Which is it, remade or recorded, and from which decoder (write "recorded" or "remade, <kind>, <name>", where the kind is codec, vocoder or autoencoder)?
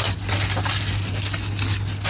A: recorded